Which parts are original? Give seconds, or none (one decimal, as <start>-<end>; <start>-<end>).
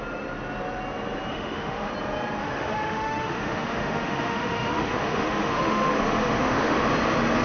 0.0-1.3; 1.9-2.4; 6.8-7.4